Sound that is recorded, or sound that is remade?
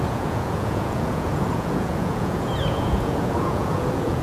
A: remade